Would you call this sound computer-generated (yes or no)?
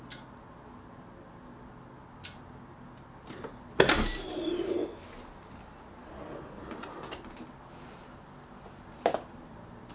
no